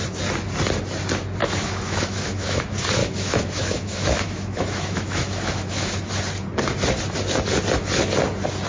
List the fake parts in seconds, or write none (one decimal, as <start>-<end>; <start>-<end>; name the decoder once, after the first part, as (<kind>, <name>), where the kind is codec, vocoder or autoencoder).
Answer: 1.4-2.6 (autoencoder, DAC-VAE); 3.0-6.1